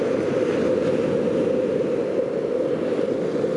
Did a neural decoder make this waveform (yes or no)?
no